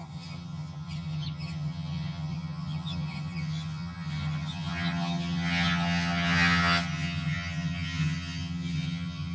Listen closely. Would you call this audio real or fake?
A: fake